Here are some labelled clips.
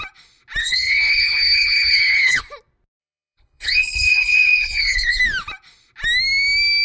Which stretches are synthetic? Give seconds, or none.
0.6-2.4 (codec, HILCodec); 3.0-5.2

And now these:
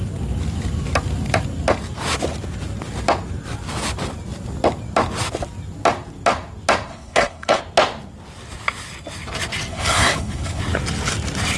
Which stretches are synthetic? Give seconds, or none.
6.9-7.6 (codec, HILCodec); 9.7-10.6